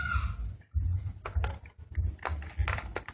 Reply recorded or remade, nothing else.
recorded